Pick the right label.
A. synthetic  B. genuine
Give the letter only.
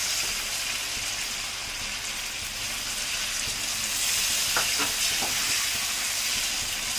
B